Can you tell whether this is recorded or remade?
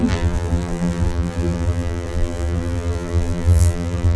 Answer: remade